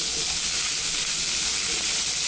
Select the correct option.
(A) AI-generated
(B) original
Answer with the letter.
B